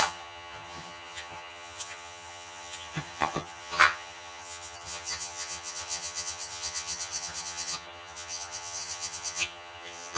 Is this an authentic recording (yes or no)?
no